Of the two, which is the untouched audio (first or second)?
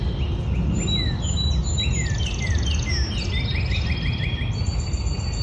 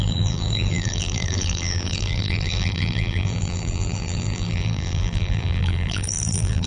first